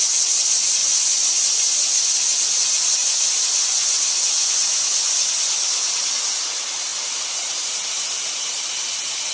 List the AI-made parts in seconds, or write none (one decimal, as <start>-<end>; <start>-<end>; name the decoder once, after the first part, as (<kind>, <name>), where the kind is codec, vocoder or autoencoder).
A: 0.8-2.4 (vocoder, Vocos); 3.0-5.3